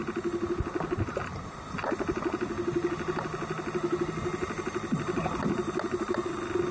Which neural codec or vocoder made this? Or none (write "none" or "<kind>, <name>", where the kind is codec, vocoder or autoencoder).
none